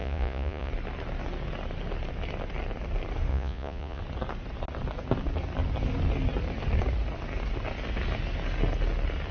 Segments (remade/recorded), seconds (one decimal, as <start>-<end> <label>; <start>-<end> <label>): 0.0-0.7 remade; 0.7-3.3 recorded; 3.3-4.0 remade; 4.0-9.3 recorded